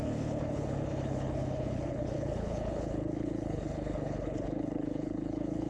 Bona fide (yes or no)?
no